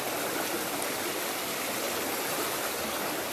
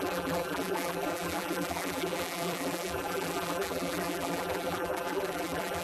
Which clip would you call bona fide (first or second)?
first